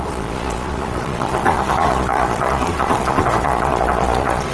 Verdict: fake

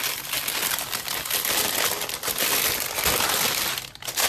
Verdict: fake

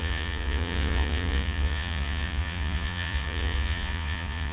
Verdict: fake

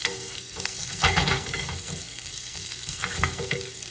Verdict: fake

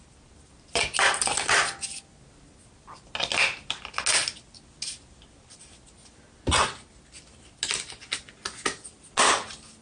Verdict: real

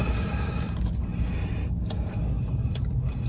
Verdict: real